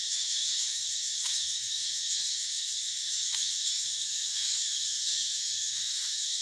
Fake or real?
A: fake